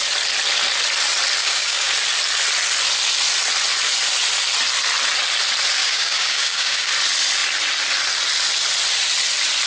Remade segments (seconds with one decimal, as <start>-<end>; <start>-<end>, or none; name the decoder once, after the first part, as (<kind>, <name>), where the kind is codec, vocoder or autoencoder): 1.4-1.9 (codec, DAC); 5.8-6.9